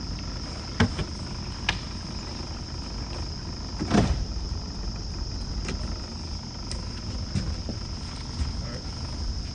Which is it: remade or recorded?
recorded